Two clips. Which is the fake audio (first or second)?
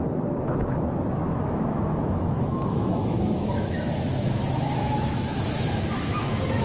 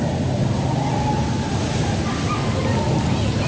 first